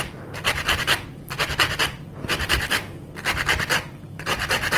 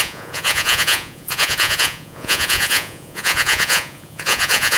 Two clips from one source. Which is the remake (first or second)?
second